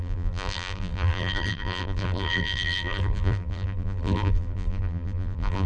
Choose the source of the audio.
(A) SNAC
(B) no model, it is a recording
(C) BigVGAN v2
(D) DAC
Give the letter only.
C